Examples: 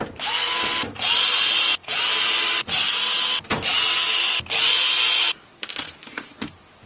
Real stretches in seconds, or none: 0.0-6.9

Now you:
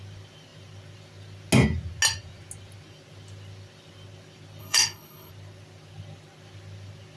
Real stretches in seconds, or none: 0.0-4.6; 5.3-7.2

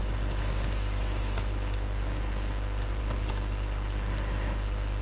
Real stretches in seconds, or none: 0.0-5.0

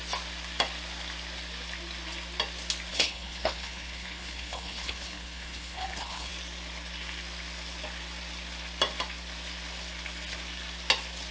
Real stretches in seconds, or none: 0.0-2.9; 6.3-11.3